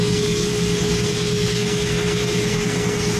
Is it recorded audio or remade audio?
remade